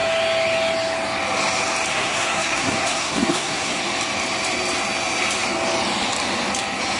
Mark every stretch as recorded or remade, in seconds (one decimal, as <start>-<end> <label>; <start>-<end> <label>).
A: 0.0-1.9 recorded; 1.9-3.8 remade; 3.8-7.0 recorded